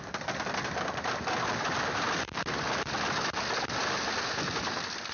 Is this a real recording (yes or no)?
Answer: yes